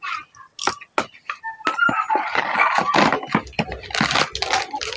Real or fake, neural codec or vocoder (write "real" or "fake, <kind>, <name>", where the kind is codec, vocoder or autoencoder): real